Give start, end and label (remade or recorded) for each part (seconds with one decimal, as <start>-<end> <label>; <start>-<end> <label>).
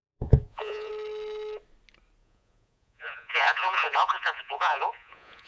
0.0-0.9 remade; 0.9-2.2 recorded; 2.2-5.5 remade